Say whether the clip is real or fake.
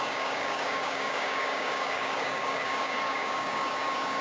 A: fake